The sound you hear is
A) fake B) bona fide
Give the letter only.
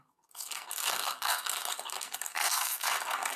A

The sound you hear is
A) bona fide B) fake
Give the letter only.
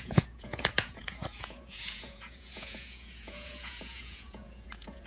B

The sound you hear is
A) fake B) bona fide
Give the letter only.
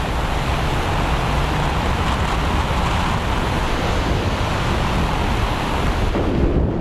B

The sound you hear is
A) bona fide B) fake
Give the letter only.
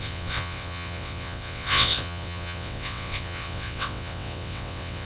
B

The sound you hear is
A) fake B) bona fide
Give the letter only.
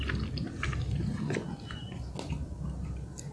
B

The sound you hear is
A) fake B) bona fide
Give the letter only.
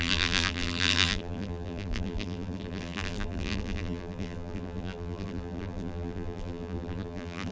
A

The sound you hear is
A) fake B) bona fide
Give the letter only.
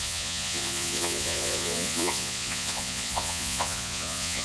A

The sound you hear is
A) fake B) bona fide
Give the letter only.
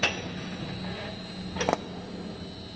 B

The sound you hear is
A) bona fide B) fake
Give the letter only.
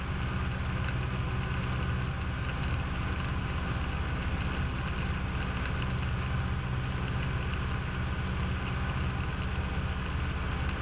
A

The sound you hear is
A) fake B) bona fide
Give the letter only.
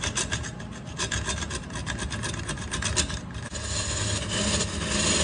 B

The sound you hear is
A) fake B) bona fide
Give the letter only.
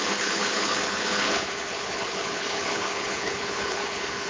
A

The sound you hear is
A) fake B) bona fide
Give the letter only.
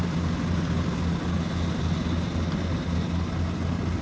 B